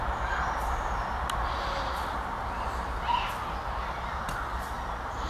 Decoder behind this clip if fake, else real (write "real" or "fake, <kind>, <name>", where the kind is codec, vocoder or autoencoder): real